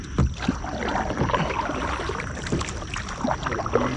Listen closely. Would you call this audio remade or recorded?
recorded